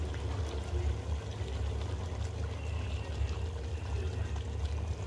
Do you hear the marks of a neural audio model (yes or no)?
no